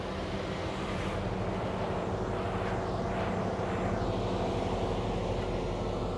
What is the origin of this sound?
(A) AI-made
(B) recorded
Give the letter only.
B